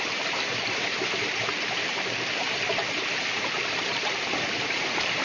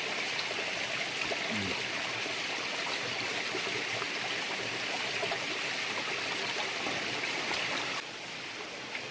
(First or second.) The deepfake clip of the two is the first